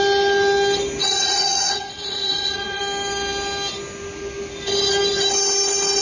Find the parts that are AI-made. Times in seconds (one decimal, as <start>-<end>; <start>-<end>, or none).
1.0-2.8